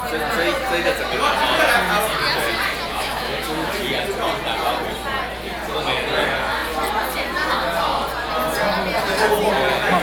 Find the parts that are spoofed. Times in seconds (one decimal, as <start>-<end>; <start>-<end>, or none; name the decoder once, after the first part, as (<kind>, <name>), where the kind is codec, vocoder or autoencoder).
2.9-3.7 (autoencoder, DAC-VAE)